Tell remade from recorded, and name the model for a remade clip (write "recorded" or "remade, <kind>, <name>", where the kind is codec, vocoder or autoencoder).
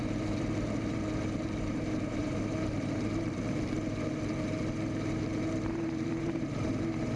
remade, vocoder, BigVGAN v2